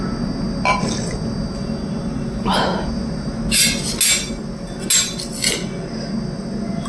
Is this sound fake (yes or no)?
no